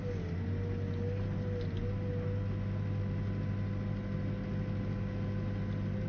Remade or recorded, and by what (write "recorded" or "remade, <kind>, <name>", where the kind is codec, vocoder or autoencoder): recorded